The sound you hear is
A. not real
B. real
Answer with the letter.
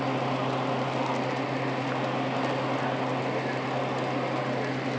B